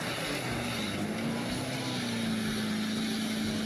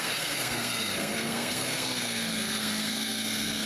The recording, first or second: first